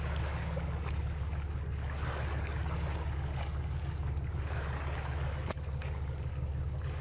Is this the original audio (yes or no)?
no